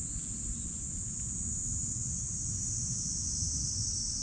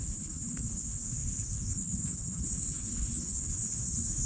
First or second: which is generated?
second